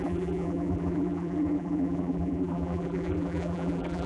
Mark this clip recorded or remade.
remade